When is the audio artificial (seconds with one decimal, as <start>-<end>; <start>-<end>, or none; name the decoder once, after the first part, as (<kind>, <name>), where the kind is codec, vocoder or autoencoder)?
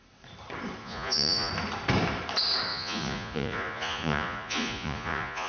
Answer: 0.8-1.5 (vocoder, Vocos); 2.7-5.5